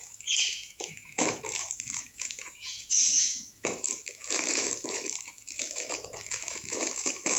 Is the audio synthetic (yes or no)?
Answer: yes